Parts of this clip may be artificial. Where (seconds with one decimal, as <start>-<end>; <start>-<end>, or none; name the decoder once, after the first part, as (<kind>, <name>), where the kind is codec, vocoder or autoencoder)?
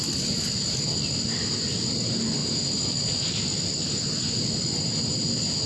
none